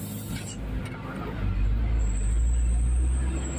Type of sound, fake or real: real